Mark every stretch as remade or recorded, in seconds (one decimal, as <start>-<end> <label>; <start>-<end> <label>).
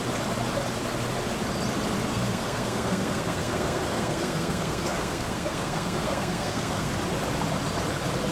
0.0-2.1 recorded; 2.1-6.9 remade; 6.9-8.3 recorded